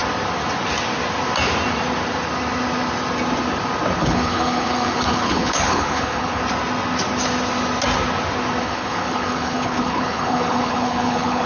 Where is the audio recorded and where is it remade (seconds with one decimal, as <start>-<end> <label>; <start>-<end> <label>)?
0.0-4.0 recorded; 4.0-6.4 remade; 6.4-8.6 recorded; 8.6-11.5 remade